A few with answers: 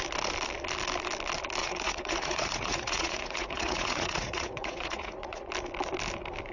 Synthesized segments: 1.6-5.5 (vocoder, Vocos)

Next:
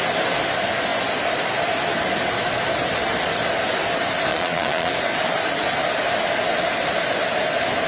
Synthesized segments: 4.3-4.9 (vocoder, Vocos)

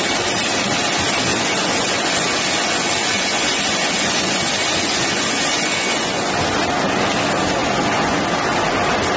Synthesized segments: 1.3-6.3 (vocoder, Vocos); 7.6-8.2

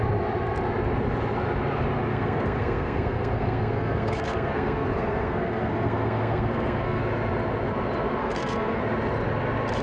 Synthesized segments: 2.1-7.0 (codec, SNAC); 8.2-8.8